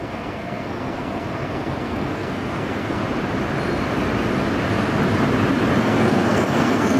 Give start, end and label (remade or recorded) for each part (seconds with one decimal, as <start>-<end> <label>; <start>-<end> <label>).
0.0-3.0 remade; 3.0-5.8 recorded; 5.8-7.0 remade